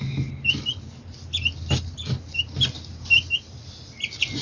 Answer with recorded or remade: recorded